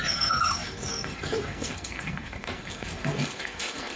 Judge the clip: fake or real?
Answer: fake